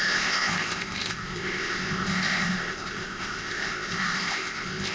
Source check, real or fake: fake